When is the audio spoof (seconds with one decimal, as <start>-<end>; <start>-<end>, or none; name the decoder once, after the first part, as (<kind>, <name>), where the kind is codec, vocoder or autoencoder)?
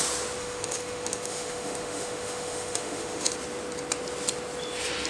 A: 0.4-3.3 (autoencoder, DAC-VAE)